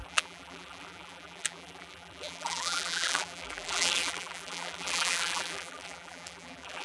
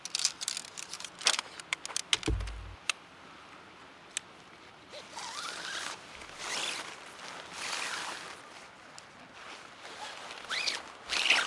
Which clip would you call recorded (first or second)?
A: second